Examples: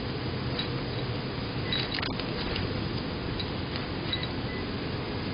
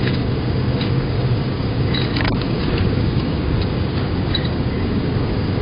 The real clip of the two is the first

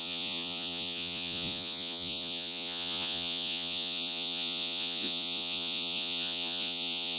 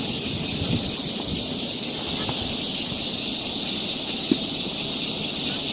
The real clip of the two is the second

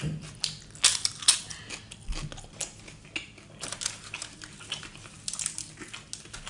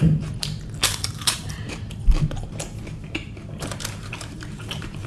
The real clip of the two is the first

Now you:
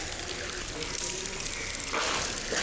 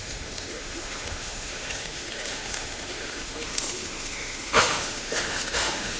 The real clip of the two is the first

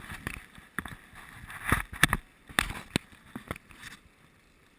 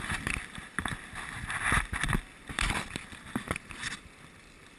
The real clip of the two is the first